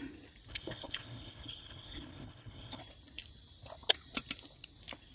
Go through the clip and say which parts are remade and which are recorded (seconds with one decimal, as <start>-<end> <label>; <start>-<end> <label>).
0.0-0.5 recorded; 0.5-2.8 remade; 2.8-5.1 recorded